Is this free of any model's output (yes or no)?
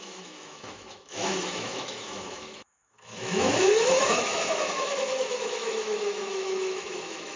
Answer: no